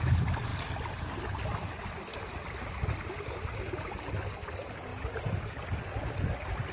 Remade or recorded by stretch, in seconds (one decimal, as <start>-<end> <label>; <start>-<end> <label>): 0.0-6.7 recorded